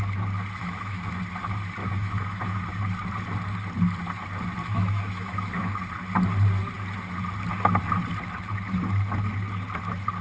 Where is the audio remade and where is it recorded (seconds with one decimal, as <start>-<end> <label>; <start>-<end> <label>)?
0.0-0.6 recorded; 0.6-1.2 remade; 1.2-1.8 recorded; 1.8-2.7 remade; 2.7-4.6 recorded; 4.6-5.8 remade; 5.8-10.2 recorded